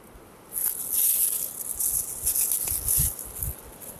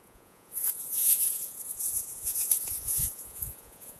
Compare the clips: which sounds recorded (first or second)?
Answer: first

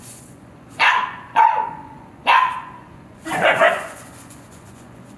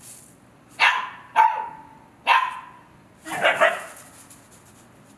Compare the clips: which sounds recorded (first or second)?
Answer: second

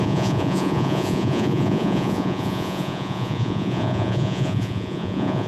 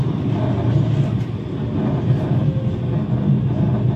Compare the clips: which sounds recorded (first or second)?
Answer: second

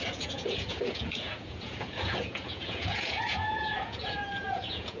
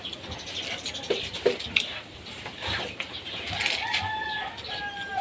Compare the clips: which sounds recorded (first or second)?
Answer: second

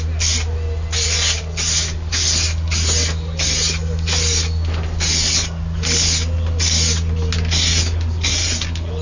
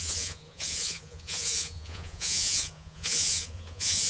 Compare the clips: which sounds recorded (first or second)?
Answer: first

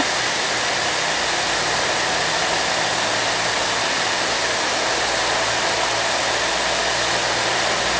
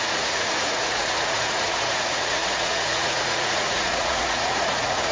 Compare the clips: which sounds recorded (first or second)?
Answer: first